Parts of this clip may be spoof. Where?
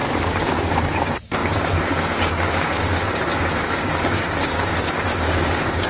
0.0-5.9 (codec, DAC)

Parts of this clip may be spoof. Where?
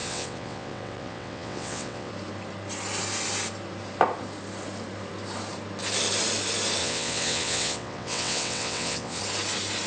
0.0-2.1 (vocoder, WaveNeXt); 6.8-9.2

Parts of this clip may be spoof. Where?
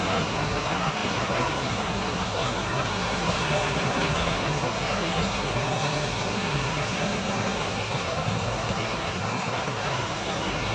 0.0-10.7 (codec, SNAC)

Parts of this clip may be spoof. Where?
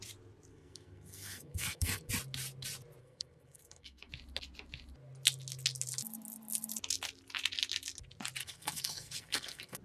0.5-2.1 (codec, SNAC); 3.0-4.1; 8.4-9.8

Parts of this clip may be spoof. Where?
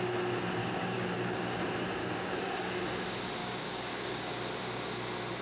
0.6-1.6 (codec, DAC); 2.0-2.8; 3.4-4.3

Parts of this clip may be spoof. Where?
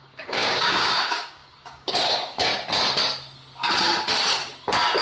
0.0-2.5 (codec, DAC)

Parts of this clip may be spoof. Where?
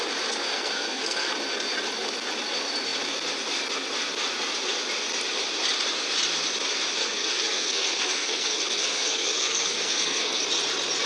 0.4-1.3 (codec, SNAC); 7.0-10.4